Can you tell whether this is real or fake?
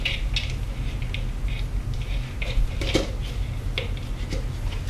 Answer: real